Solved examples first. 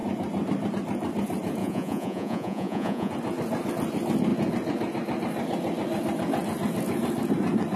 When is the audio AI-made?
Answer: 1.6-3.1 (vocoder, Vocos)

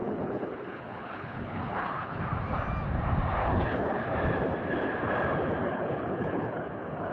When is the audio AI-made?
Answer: 0.0-2.2 (codec, HILCodec); 3.4-4.1; 5.6-7.1

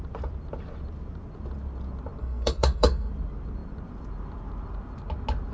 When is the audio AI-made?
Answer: 2.2-3.1 (codec, SNAC)

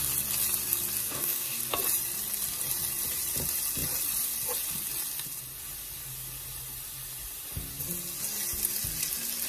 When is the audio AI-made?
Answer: 1.0-1.6 (codec, DAC)

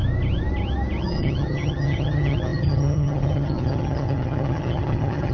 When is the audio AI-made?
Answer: 1.0-5.3 (vocoder, HiFi-GAN)

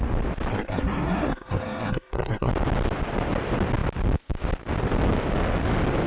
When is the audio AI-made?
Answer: 0.5-2.5 (codec, SNAC)

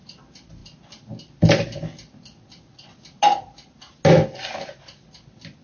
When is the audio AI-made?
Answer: none

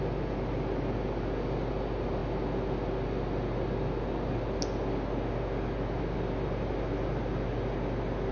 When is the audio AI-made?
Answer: none